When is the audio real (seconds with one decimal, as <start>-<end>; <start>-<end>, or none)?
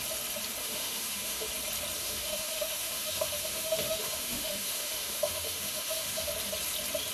0.0-0.6; 1.5-2.0; 6.3-7.1